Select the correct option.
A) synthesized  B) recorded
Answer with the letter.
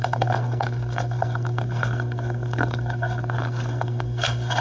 A